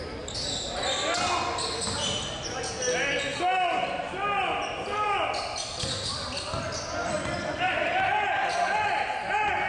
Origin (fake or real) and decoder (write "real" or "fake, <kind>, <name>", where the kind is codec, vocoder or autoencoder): real